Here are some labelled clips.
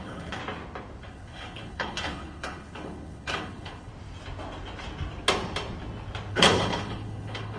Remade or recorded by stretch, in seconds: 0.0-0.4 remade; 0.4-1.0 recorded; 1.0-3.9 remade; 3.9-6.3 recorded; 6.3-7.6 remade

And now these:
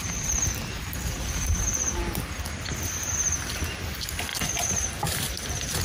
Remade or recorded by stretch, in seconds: 0.0-0.8 remade; 0.8-5.8 recorded